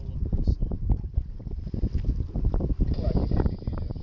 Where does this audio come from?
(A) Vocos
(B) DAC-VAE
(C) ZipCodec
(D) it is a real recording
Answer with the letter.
D